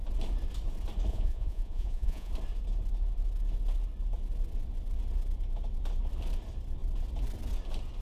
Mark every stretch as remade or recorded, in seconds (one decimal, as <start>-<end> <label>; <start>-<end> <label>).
0.0-1.1 recorded; 1.1-2.3 remade; 2.3-8.0 recorded